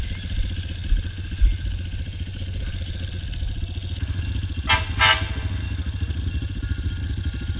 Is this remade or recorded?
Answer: recorded